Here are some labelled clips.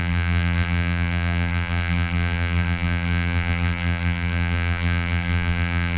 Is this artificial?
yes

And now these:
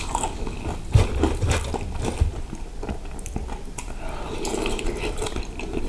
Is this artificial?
no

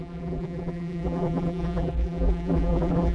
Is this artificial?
yes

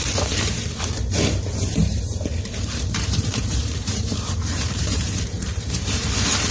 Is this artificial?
yes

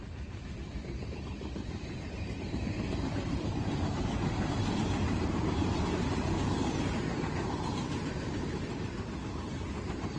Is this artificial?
yes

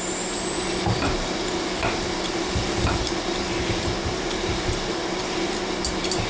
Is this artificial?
no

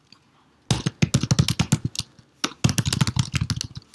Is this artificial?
no